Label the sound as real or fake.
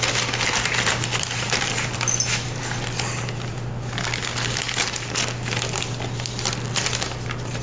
real